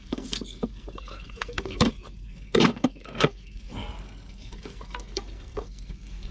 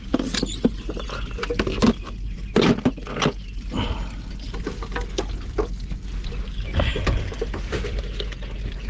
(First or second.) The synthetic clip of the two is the first